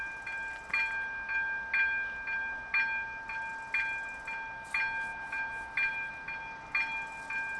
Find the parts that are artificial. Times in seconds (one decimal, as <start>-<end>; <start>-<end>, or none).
none